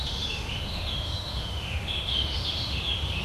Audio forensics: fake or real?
fake